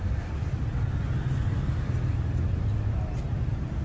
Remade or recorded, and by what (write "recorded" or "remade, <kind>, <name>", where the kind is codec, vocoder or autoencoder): recorded